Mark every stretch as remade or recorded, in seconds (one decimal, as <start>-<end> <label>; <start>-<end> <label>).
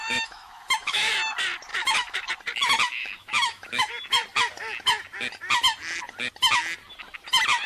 0.0-1.1 remade; 1.1-1.7 recorded; 1.7-2.3 remade; 2.3-3.0 recorded; 3.0-3.9 remade; 3.9-7.7 recorded